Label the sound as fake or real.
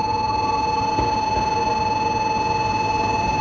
real